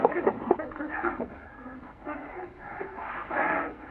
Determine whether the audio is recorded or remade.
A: remade